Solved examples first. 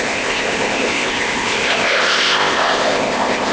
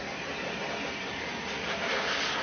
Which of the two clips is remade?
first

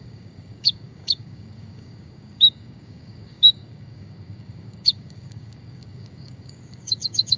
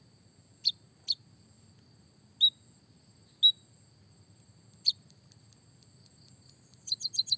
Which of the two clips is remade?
first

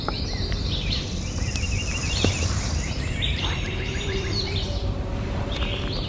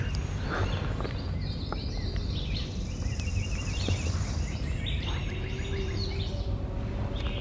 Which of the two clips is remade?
first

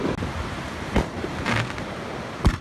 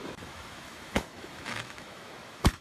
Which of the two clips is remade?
second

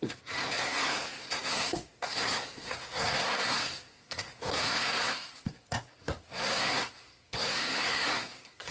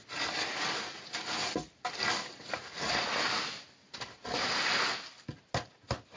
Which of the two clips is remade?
first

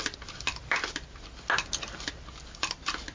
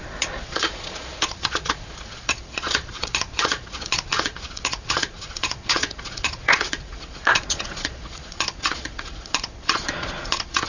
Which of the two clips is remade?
second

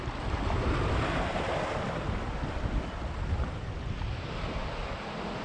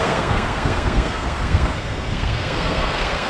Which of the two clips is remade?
second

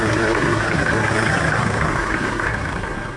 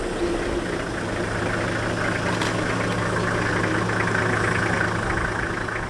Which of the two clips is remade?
first